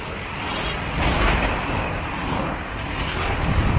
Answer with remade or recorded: recorded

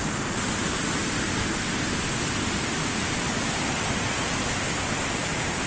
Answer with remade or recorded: recorded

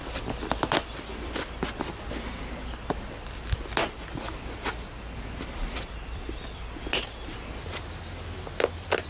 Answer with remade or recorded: recorded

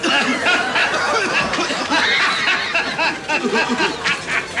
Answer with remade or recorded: recorded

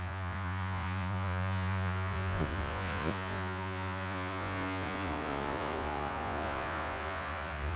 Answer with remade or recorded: remade